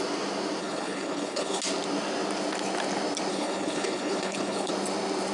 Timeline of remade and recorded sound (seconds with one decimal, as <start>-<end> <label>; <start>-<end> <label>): 0.0-0.6 recorded; 0.6-1.6 remade; 1.6-3.3 recorded; 3.3-4.7 remade; 4.7-5.3 recorded